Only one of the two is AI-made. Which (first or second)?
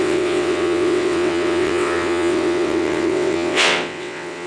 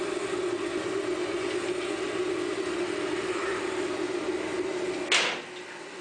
first